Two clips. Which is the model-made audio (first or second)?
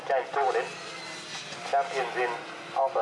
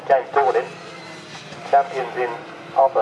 second